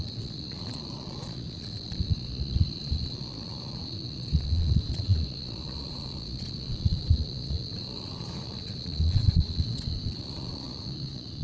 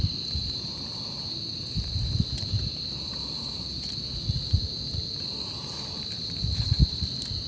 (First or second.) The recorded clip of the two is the second